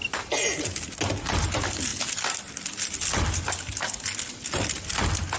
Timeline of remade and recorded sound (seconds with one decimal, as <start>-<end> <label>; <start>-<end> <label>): 0.0-5.4 recorded